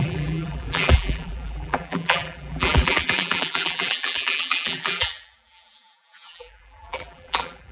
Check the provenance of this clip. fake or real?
fake